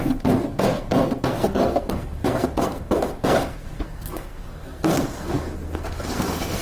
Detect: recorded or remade remade